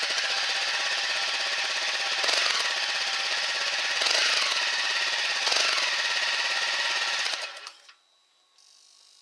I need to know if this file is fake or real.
real